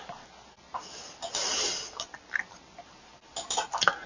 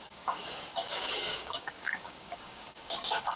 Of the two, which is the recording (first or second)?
first